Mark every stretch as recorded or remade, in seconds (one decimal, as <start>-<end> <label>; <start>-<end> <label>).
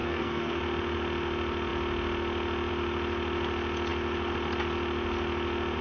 0.0-0.6 remade; 0.6-5.8 recorded